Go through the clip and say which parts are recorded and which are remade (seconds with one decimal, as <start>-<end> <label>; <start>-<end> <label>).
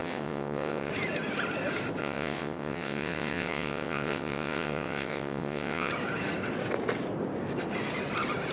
0.0-0.9 remade; 0.9-2.0 recorded; 2.0-5.9 remade; 5.9-8.5 recorded